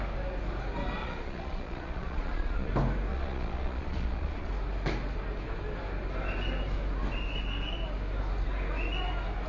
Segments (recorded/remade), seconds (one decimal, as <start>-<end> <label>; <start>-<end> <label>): 0.0-1.0 recorded; 1.0-2.7 remade; 2.7-3.1 recorded; 3.1-4.5 remade; 4.5-9.5 recorded